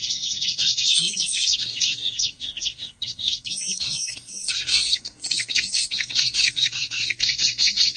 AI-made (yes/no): yes